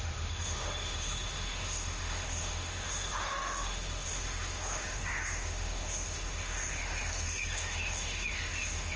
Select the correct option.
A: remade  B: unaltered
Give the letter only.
A